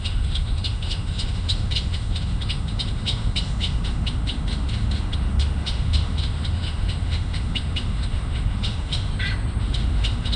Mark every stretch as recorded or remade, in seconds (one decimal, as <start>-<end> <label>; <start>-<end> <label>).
0.0-9.1 remade; 9.1-9.6 recorded; 9.6-10.4 remade